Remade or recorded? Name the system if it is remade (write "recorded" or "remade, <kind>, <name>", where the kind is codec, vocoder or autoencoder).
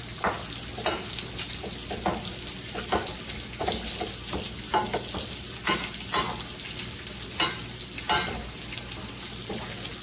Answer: recorded